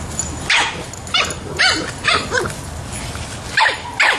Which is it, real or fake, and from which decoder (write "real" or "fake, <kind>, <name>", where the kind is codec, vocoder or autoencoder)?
real